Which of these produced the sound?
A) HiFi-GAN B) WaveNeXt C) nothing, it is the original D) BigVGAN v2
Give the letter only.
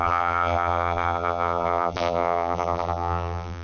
D